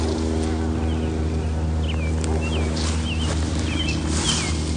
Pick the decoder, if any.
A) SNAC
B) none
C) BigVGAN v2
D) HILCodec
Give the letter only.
B